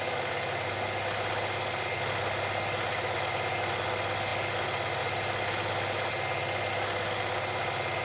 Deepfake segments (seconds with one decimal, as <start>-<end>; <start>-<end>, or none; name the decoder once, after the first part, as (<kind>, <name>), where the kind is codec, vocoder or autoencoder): none